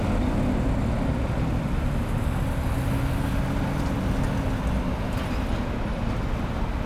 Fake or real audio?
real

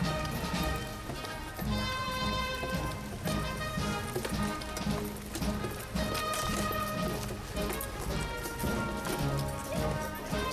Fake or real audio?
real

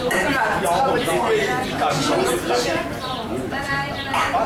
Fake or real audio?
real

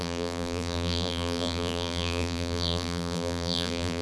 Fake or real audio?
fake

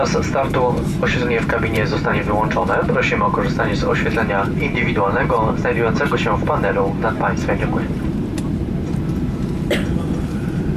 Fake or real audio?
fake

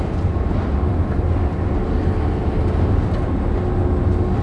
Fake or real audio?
real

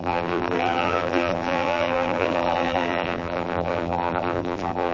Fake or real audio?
fake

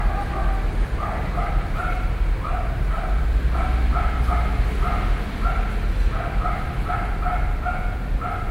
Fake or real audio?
real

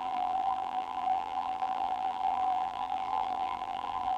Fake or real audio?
fake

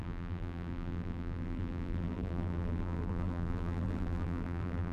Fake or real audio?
fake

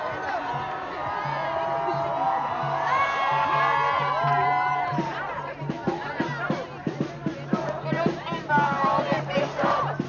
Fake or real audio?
real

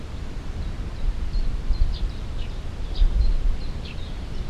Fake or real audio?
fake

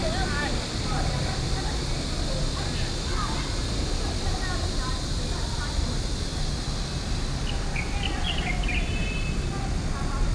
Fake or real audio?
real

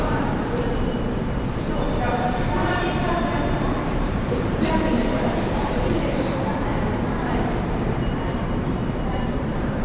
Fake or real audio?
fake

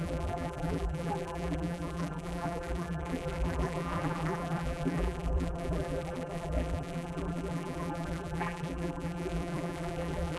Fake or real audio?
fake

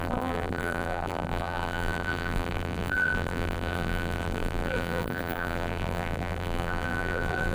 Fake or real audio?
fake